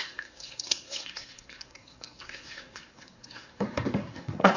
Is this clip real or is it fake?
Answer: fake